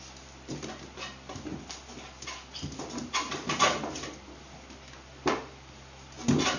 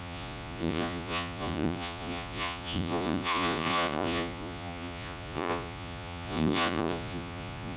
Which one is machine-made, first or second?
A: second